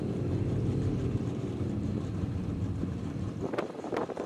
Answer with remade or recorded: remade